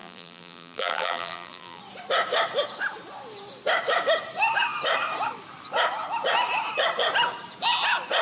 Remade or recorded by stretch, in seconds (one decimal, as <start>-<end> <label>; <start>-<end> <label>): 0.0-1.8 remade; 1.8-8.2 recorded